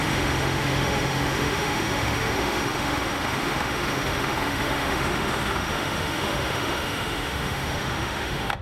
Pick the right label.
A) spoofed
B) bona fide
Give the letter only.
A